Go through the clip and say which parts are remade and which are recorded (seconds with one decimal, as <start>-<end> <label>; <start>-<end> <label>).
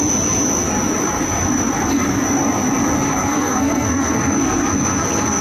0.0-3.1 recorded; 3.1-5.4 remade